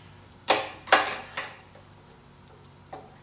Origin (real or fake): fake